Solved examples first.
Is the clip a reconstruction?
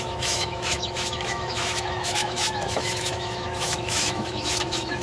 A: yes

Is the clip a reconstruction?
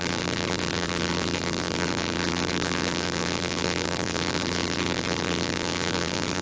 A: yes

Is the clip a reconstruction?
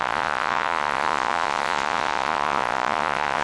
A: yes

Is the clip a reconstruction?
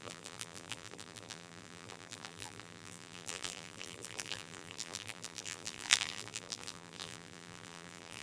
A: yes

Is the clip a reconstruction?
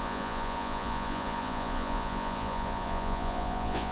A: yes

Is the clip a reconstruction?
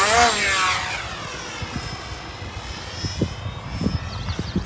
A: no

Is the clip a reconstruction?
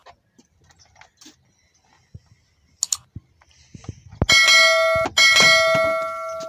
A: no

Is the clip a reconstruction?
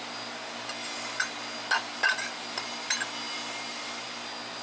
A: no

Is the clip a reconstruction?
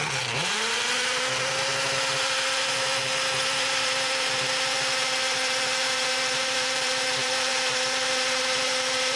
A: yes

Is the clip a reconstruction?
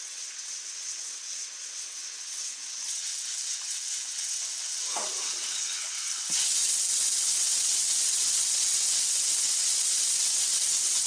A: yes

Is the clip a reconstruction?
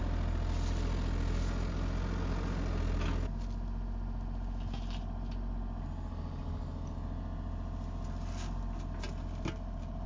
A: no